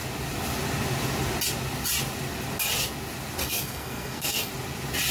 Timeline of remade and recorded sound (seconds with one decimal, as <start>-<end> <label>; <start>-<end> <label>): 0.0-3.4 recorded; 3.4-4.5 remade; 4.5-5.1 recorded